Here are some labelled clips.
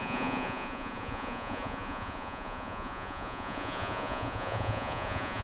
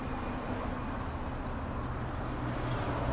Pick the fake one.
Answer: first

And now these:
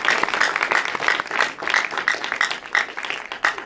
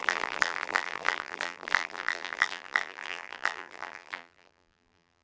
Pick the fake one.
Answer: second